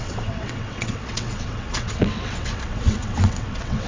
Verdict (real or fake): fake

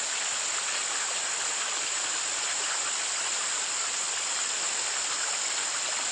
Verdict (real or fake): real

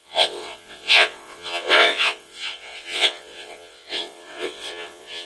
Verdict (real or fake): fake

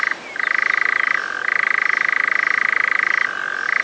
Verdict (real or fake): real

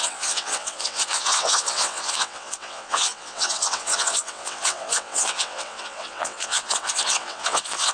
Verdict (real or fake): fake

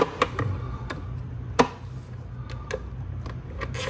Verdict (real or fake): real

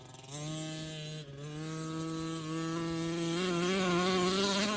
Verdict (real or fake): real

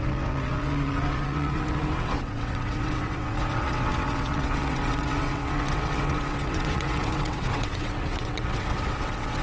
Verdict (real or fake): fake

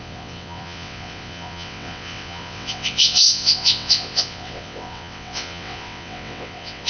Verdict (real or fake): fake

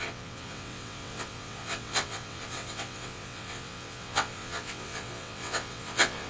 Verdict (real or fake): fake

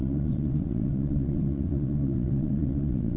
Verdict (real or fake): fake